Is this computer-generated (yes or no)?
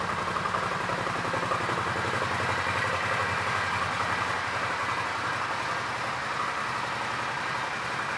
no